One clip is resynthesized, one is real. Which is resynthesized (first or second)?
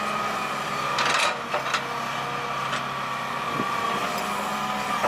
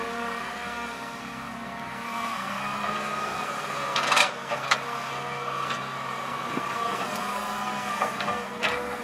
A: second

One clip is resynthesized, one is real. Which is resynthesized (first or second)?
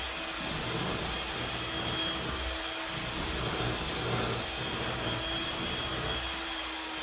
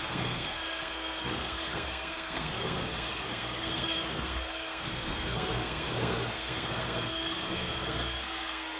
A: second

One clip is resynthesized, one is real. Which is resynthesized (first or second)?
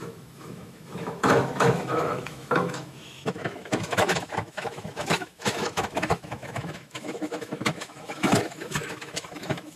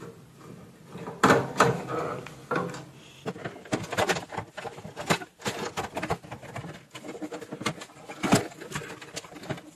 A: first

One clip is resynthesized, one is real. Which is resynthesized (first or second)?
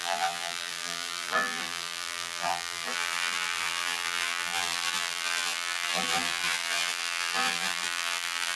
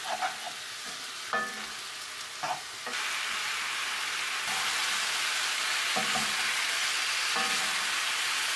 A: first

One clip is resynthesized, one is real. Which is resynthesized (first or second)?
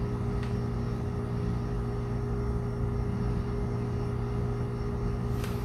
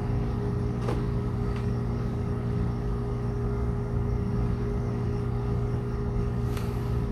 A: second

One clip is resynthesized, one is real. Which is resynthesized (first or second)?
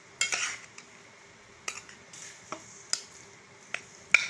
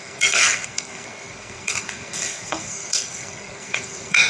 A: second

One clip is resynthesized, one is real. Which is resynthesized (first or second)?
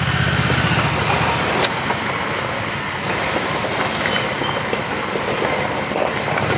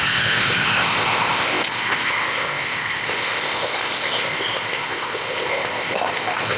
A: second